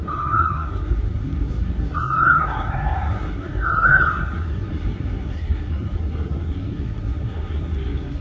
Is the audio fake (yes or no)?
yes